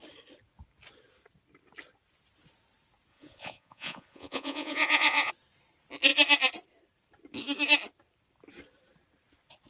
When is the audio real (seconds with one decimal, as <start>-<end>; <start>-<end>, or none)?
0.0-3.1; 5.3-9.7